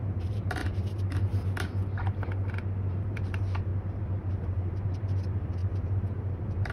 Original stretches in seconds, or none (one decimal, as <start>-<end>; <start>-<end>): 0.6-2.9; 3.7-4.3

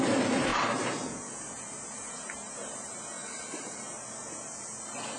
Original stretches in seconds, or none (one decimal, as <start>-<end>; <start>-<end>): none

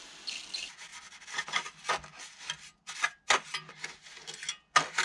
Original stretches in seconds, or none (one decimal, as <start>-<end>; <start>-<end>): 0.0-5.0

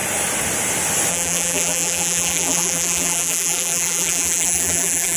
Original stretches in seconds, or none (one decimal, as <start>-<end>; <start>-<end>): 0.0-1.1

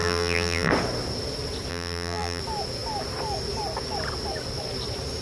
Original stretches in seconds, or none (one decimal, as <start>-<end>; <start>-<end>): 0.7-1.7; 2.4-5.2